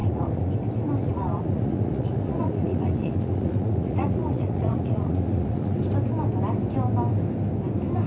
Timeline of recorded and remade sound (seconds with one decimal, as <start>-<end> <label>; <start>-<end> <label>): 0.0-0.5 remade; 0.5-1.0 recorded; 1.0-5.8 remade; 5.8-8.1 recorded